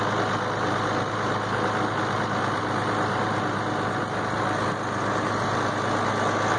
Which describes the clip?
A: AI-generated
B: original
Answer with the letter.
B